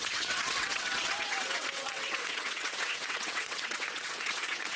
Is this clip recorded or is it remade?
remade